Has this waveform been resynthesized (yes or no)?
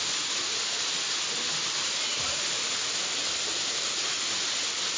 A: no